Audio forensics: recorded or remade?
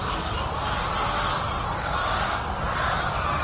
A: recorded